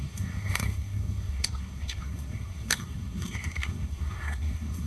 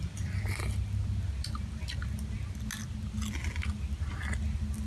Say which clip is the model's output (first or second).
first